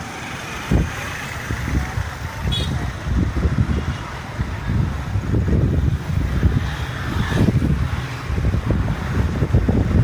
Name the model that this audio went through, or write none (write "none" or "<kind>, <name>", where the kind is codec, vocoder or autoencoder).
vocoder, BigVGAN v2